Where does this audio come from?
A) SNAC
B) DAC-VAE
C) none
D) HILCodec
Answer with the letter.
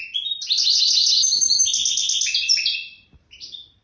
C